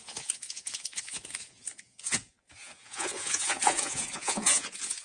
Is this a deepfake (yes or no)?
yes